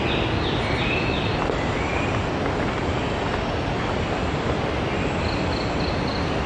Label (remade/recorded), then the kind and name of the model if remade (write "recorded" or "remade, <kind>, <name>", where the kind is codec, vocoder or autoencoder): recorded